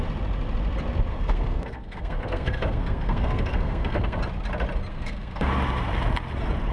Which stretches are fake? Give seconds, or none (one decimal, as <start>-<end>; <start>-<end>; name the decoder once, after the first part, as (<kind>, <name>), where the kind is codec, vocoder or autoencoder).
1.1-4.2 (codec, SNAC); 4.9-5.5